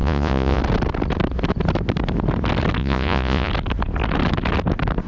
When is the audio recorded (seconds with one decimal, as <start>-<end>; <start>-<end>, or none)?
0.6-2.8; 3.5-5.1